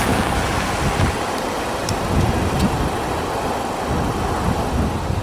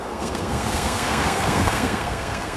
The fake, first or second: second